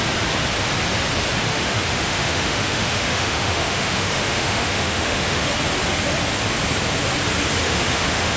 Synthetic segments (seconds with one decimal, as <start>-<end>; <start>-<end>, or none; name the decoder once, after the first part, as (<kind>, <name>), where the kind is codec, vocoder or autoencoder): 1.5-5.5 (autoencoder, DAC-VAE); 7.6-8.4